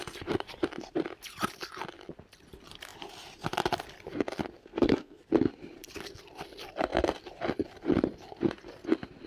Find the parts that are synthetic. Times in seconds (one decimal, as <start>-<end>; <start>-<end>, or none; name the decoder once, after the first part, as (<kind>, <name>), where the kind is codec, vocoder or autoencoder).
4.6-5.2 (codec, SNAC)